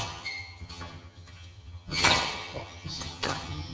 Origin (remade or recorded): remade